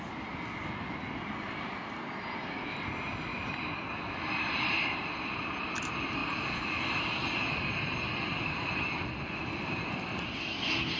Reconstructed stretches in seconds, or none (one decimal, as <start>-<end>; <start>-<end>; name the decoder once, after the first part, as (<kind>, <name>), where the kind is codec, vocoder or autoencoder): none